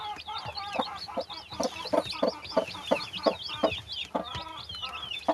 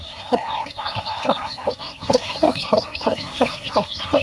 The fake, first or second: second